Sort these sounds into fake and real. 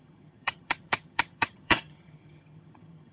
fake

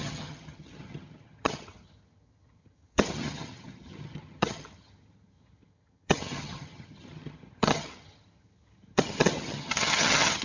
fake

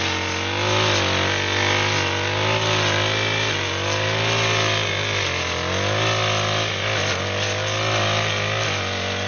real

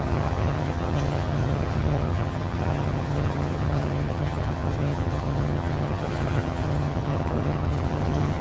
fake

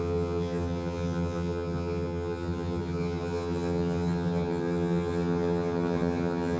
fake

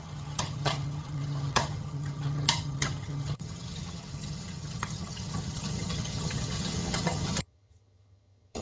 fake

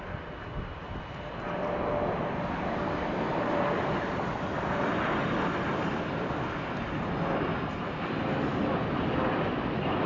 real